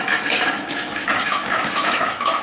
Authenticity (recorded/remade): remade